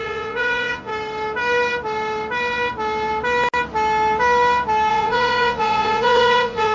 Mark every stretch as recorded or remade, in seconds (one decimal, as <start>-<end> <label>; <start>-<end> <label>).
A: 0.0-0.9 remade; 0.9-4.9 recorded; 4.9-6.7 remade